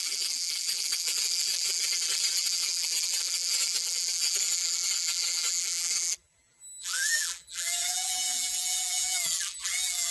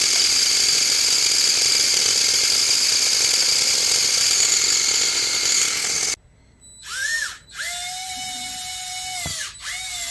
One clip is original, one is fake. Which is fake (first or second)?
first